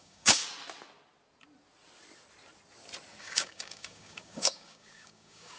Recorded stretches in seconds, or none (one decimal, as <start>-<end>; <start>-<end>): 0.4-3.2